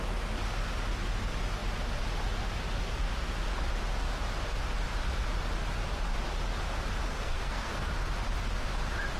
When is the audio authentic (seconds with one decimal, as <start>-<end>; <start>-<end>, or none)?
0.0-7.0; 7.9-9.2